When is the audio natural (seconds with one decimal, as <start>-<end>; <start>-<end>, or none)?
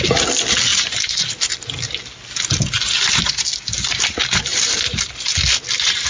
0.0-6.1